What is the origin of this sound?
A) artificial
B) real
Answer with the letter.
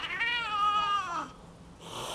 B